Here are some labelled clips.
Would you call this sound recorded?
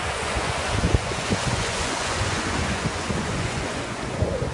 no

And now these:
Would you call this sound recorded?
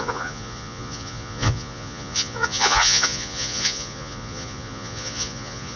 no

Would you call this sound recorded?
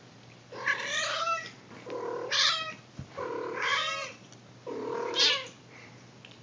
no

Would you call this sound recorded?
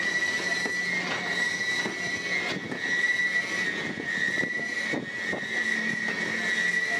yes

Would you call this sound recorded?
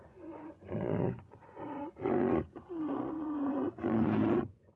no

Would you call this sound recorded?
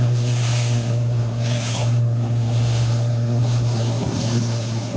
no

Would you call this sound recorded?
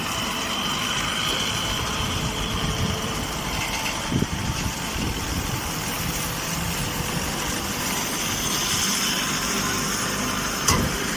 no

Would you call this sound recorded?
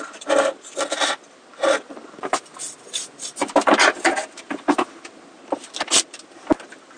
yes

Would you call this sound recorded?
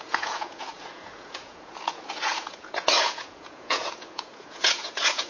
no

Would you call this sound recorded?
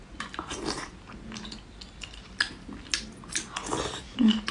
yes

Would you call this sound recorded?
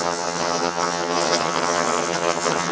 no